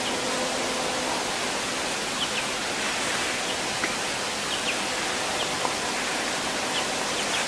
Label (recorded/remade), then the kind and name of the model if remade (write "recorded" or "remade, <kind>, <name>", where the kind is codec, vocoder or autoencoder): recorded